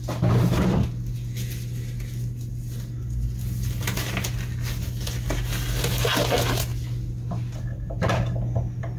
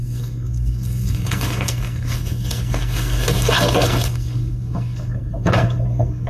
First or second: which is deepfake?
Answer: second